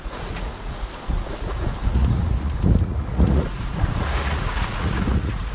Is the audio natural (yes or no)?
no